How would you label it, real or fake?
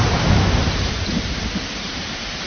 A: fake